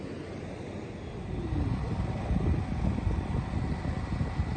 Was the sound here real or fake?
real